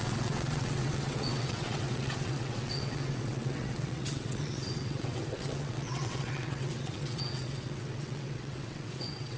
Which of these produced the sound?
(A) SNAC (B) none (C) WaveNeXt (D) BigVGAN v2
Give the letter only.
C